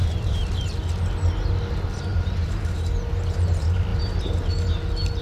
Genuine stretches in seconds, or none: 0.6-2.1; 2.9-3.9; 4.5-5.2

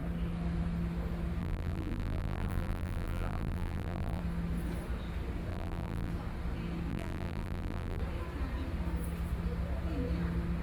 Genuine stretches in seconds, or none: 0.0-1.4; 4.2-5.5; 6.1-6.9; 8.0-10.6

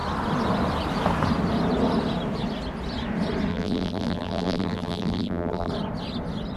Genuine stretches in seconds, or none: 0.0-3.5; 5.7-6.6

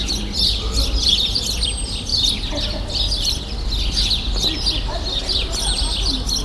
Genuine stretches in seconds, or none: 0.0-6.4

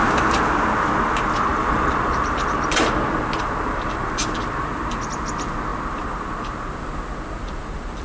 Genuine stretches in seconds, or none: 0.0-1.5; 2.7-8.0